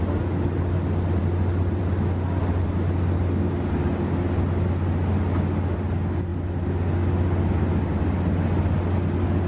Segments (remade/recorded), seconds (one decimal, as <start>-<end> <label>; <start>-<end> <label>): 0.0-9.5 recorded